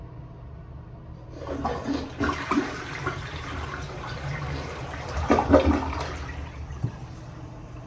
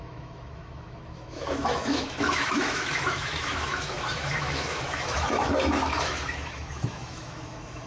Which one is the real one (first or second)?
first